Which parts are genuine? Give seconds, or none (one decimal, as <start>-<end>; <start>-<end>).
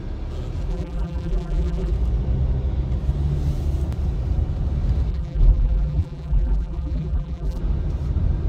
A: 0.0-0.7; 1.9-5.1; 7.6-8.5